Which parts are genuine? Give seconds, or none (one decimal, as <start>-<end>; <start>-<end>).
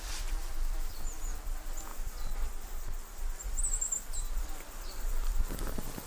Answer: none